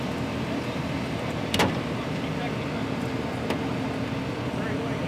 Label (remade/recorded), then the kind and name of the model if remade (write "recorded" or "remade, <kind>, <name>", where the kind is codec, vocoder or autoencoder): recorded